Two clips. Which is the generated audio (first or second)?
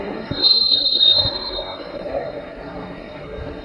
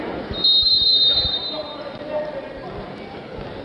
first